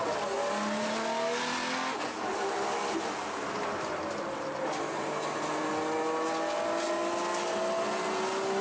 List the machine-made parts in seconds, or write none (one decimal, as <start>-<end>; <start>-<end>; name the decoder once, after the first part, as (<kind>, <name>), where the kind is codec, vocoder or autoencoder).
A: none